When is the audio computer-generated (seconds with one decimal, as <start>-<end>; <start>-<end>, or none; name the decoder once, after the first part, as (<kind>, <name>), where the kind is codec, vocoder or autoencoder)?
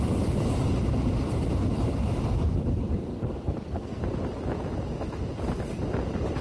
3.1-4.0 (codec, SNAC)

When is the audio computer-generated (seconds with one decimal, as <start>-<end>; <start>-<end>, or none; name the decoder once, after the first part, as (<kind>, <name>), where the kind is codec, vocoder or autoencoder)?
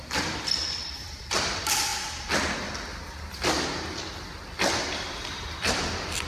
0.0-1.9 (vocoder, BigVGAN v2); 4.8-6.3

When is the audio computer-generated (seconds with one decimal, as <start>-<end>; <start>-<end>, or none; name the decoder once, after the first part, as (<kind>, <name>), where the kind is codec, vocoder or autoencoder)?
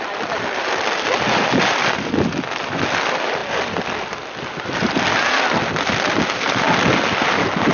none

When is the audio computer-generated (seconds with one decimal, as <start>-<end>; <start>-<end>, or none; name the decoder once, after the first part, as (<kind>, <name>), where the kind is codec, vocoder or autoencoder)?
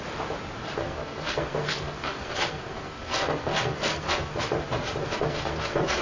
0.8-4.4 (codec, SNAC); 5.0-6.0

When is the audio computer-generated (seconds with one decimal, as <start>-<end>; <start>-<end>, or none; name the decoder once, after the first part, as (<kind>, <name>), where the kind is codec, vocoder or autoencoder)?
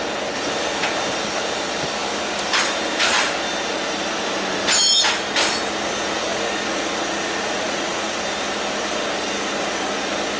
6.3-8.2 (vocoder, Vocos)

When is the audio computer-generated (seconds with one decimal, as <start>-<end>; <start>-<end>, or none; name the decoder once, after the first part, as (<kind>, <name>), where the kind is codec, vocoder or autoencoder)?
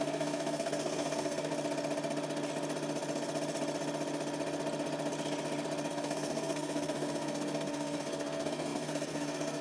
0.0-1.5 (codec, SNAC); 5.9-9.6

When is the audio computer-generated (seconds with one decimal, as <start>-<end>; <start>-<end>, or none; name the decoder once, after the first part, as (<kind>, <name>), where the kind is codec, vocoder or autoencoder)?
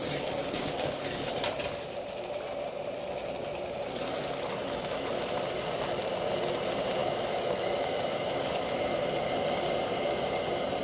4.6-5.3 (autoencoder, DAC-VAE); 7.0-9.0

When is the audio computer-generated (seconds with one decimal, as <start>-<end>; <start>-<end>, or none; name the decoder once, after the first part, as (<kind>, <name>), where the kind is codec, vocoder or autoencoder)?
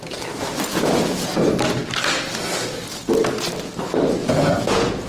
0.7-1.3 (vocoder, Vocos); 4.2-5.1